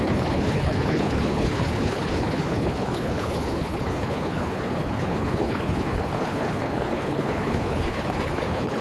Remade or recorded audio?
remade